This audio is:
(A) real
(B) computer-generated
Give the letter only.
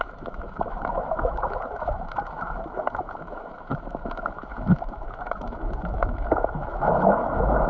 B